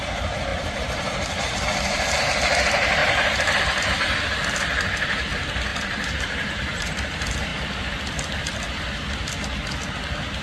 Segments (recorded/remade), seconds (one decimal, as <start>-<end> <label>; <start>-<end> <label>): 0.0-7.5 remade; 7.5-10.4 recorded